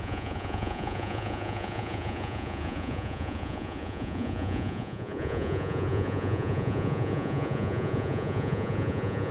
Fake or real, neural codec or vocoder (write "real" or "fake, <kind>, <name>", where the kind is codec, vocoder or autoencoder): fake, vocoder, Vocos